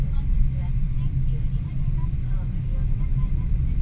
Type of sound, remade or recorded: recorded